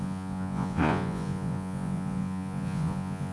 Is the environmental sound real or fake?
fake